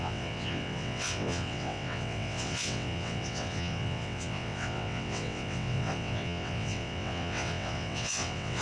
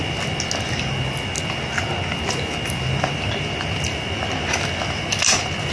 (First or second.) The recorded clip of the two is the second